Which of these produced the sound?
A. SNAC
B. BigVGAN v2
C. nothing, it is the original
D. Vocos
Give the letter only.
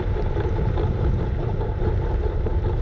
B